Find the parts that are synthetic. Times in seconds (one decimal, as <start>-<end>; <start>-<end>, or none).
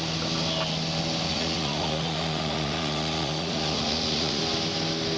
1.3-4.4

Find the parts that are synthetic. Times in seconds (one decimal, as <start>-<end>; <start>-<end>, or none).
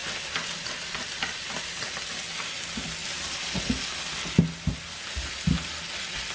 0.0-2.4; 3.0-3.6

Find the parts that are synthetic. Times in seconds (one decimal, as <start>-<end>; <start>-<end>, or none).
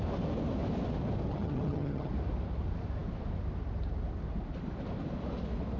1.3-2.1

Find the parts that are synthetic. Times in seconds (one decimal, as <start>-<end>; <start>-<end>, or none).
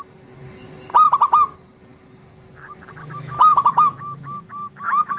3.0-5.2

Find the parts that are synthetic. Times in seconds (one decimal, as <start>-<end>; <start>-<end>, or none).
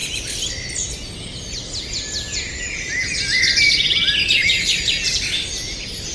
none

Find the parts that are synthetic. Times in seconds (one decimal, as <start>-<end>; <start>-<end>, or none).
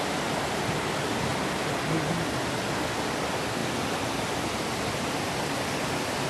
0.0-1.3; 3.1-3.6; 5.0-6.3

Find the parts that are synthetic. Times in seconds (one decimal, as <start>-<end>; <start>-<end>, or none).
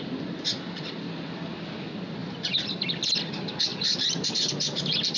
2.2-3.2; 3.7-4.8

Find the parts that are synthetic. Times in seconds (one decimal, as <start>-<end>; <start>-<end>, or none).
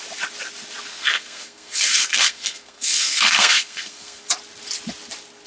0.9-4.2